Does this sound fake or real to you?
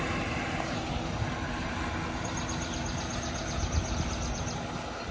real